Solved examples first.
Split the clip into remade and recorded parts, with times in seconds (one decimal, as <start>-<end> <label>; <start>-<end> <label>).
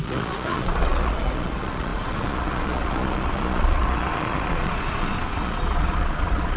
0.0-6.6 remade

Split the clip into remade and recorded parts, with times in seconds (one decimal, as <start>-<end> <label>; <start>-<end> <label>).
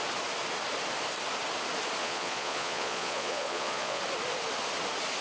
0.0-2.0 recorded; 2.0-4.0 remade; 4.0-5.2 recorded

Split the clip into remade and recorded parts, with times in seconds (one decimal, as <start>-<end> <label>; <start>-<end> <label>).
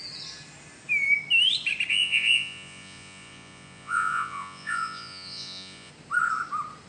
0.0-1.9 recorded; 1.9-5.9 remade; 5.9-6.9 recorded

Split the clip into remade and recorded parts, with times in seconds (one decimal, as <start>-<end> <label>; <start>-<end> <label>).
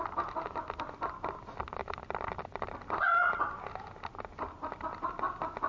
0.0-5.7 recorded